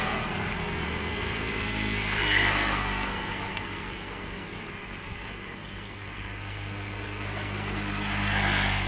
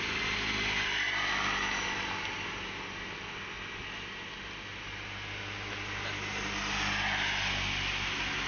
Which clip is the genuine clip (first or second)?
second